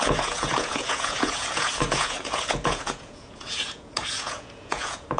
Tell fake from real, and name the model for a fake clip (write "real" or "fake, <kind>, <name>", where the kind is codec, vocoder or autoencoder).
fake, vocoder, Vocos